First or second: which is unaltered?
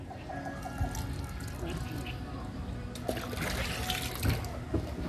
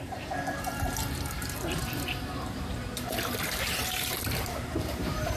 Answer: first